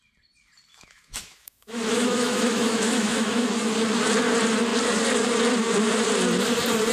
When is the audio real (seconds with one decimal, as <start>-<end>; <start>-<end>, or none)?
0.0-0.7; 3.5-6.9